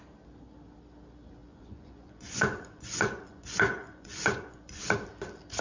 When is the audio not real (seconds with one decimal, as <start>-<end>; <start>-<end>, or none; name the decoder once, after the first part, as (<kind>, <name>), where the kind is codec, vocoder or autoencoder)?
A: 1.4-4.8 (vocoder, Vocos)